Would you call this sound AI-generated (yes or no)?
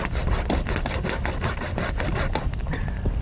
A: no